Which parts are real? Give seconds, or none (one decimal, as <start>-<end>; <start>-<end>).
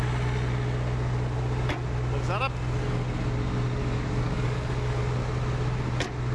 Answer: 0.0-3.8; 5.0-6.3